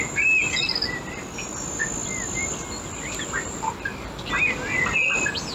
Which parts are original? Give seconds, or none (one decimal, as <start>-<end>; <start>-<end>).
0.0-5.5